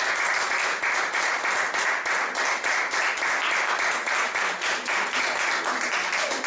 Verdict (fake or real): real